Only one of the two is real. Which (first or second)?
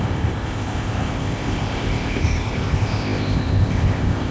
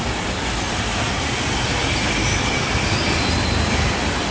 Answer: second